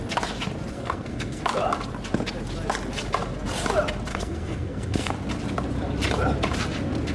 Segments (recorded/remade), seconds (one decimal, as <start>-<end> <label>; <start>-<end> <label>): 0.0-0.7 recorded; 0.7-1.4 remade; 1.4-4.1 recorded; 4.1-5.1 remade; 5.1-7.1 recorded